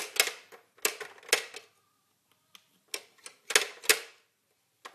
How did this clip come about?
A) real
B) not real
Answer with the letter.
A